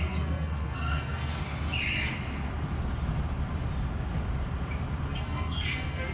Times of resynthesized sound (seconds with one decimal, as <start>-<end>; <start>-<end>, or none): 0.0-1.4; 5.1-6.1